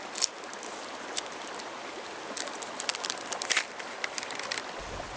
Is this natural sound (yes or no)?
yes